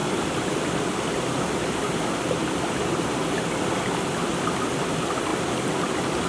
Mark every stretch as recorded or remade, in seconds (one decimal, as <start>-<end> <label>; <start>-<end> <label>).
0.0-6.3 recorded